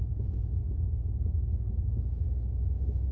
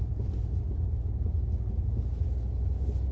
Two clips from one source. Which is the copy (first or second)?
first